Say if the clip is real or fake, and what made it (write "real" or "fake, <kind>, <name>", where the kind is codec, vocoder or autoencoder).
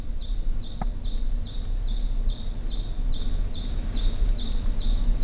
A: real